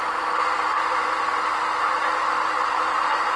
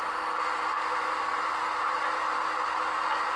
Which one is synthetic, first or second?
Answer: first